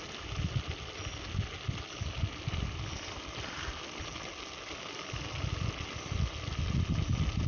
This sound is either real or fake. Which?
real